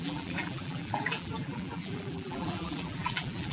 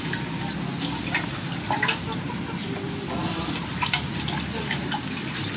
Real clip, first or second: second